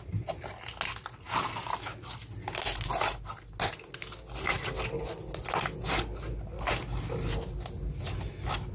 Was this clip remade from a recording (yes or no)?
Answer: no